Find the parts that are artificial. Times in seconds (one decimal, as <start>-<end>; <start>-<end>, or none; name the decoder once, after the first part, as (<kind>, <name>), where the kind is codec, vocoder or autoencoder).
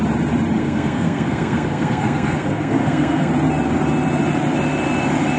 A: 0.6-3.3 (codec, SNAC)